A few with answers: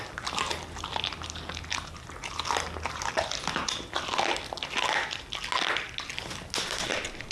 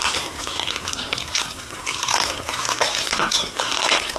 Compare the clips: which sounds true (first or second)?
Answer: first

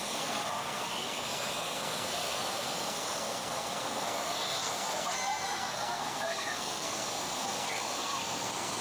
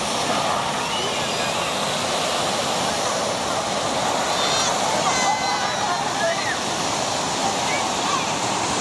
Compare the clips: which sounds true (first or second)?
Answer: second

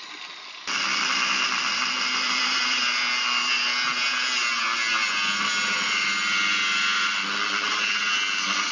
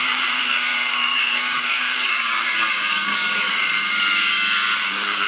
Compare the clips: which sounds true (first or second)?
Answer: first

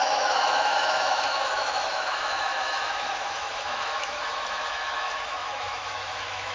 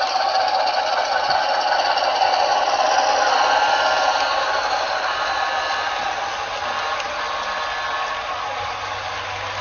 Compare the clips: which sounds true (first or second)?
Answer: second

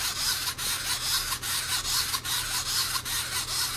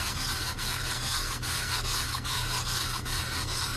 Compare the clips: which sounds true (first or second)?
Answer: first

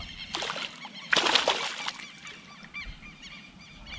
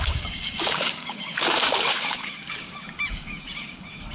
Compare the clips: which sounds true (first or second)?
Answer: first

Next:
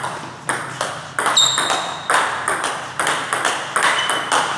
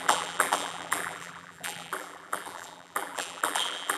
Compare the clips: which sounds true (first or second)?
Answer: first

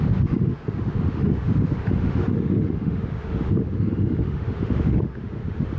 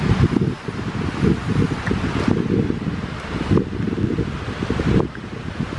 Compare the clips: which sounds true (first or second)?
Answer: second